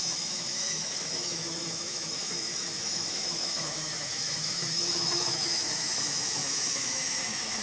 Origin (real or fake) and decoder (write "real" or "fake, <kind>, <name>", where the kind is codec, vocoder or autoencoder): fake, autoencoder, DAC-VAE